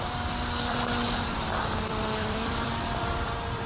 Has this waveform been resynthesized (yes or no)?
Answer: yes